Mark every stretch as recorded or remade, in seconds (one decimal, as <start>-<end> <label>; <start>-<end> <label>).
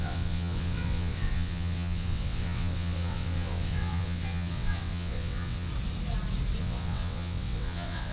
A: 0.0-5.7 remade; 5.7-6.6 recorded; 6.6-8.1 remade